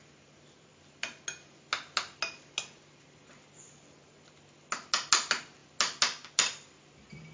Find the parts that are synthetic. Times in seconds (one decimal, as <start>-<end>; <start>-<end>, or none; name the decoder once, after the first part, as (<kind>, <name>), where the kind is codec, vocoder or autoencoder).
none